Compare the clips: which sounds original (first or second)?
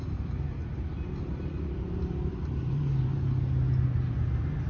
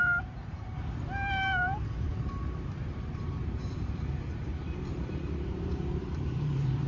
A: first